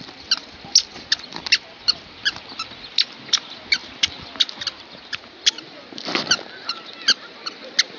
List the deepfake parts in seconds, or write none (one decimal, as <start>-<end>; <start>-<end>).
none